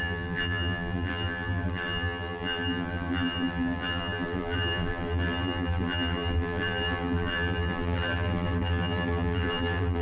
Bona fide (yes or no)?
no